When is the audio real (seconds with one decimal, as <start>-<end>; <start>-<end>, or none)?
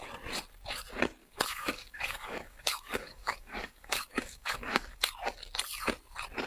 0.0-1.2; 5.1-6.5